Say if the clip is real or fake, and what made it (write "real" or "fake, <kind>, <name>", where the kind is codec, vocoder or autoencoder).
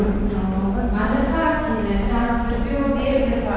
real